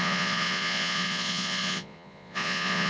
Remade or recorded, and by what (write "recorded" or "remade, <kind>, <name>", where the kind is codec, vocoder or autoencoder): remade, vocoder, Vocos